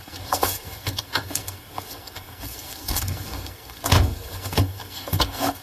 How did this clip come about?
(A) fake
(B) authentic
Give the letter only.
A